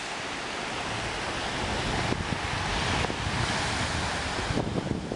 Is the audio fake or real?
real